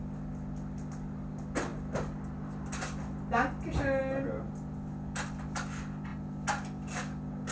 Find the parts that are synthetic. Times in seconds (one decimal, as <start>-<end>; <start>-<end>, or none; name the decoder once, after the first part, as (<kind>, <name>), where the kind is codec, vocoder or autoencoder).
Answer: none